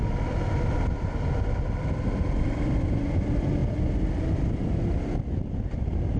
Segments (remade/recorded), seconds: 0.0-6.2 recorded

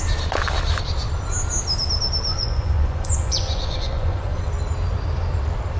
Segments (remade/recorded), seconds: 0.0-2.3 recorded; 2.3-4.5 remade; 4.5-5.8 recorded